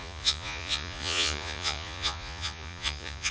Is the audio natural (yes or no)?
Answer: no